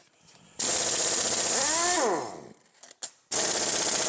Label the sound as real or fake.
real